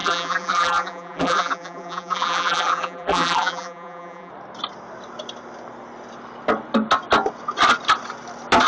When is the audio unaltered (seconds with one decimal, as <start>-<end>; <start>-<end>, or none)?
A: 4.3-8.7